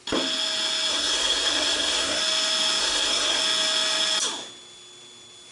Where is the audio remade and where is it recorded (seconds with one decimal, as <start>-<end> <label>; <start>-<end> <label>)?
0.0-0.9 recorded; 0.9-2.2 remade; 2.2-2.8 recorded; 2.8-3.4 remade; 3.4-5.5 recorded